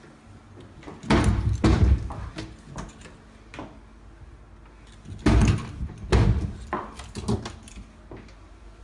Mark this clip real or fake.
real